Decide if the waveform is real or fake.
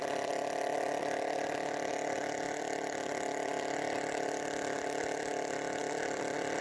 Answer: real